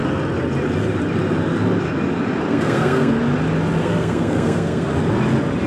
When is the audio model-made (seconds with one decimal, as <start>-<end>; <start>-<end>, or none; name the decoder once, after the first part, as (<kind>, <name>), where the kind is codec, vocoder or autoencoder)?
2.5-3.2 (codec, SNAC); 3.8-4.9